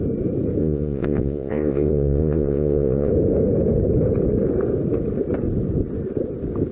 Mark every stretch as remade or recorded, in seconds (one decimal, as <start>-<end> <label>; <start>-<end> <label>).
0.0-0.6 recorded; 0.6-3.1 remade; 3.1-6.7 recorded